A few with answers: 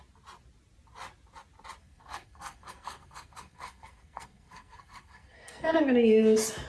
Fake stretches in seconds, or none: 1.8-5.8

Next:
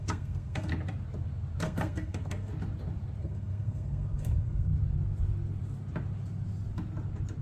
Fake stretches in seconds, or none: 0.0-0.7; 1.6-2.5; 3.2-4.7

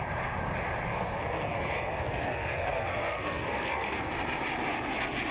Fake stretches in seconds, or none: 0.9-4.1

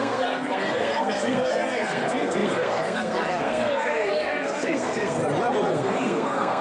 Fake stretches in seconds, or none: 0.0-5.2; 5.7-6.6

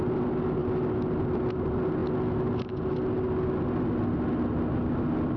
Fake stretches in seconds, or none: none

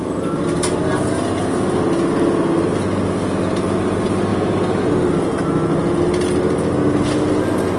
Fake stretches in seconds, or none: none